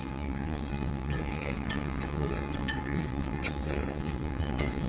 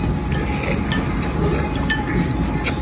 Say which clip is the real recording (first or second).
second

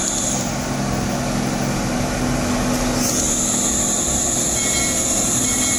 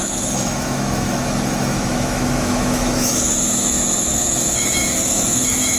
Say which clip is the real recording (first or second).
first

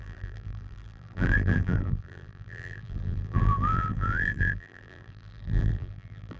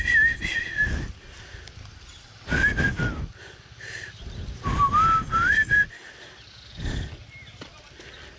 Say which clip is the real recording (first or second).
second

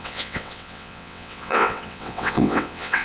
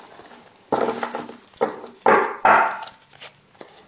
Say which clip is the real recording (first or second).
second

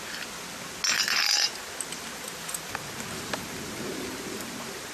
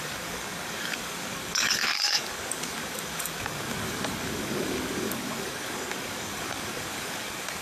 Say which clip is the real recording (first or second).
first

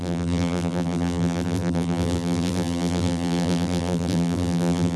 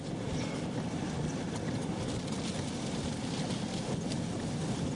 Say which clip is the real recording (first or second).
second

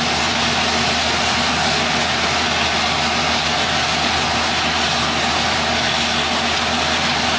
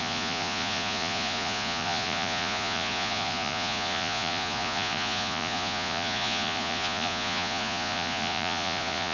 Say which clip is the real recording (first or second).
first